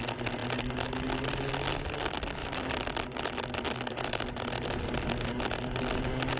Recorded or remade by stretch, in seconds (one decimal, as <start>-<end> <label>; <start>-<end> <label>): 0.0-2.4 recorded; 2.4-4.8 remade; 4.8-6.4 recorded

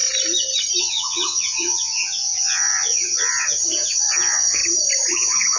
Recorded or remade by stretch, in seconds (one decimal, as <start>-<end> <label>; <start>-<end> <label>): 0.0-0.8 recorded; 0.8-4.6 remade; 4.6-5.1 recorded; 5.1-5.6 remade